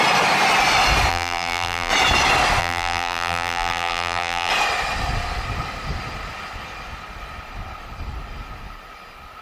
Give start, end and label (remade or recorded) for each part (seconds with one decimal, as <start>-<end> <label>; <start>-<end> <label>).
0.0-1.1 recorded; 1.1-1.9 remade; 1.9-2.6 recorded; 2.6-4.5 remade; 4.5-9.4 recorded